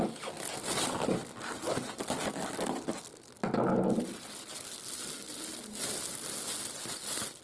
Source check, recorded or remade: recorded